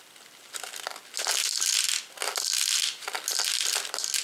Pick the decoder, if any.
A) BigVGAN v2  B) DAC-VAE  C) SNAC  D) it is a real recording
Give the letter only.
D